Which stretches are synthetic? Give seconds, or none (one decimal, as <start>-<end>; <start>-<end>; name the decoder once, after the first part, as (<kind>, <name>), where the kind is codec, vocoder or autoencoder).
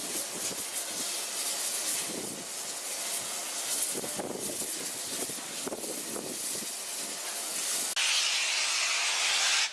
none